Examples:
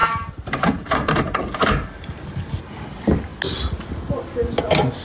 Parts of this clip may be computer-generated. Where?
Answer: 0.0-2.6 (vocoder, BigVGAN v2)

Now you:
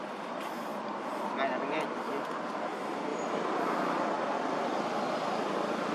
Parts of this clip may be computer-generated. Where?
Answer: 0.7-1.8 (vocoder, BigVGAN v2); 3.1-4.7

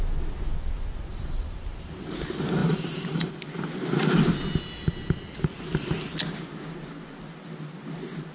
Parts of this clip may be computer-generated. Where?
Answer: 1.1-1.6 (vocoder, BigVGAN v2); 2.6-3.3

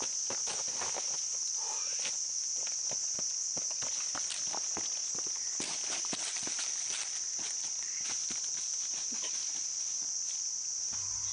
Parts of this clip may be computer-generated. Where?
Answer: 5.4-8.8 (vocoder, BigVGAN v2)